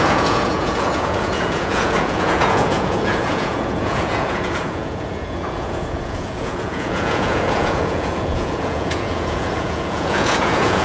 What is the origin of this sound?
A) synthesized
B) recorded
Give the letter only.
A